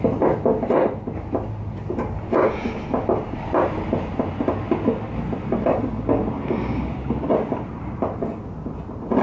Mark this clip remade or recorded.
recorded